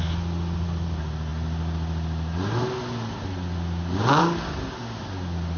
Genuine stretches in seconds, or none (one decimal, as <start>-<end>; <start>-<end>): 0.0-5.6